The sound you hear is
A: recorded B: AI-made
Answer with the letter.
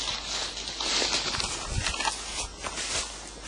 A